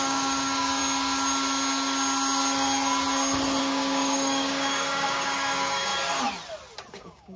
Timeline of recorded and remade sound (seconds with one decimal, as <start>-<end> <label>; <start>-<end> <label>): 0.0-0.8 remade; 0.8-3.6 recorded; 3.6-5.9 remade; 5.9-6.9 recorded; 6.9-7.4 remade